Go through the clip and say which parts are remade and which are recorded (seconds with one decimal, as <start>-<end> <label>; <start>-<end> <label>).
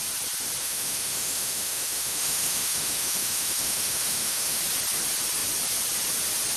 0.0-0.6 recorded; 0.6-4.6 remade; 4.6-6.6 recorded